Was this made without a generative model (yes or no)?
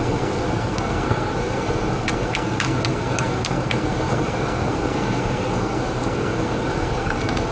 no